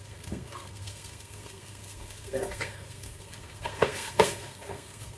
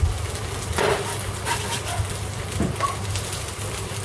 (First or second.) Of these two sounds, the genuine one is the second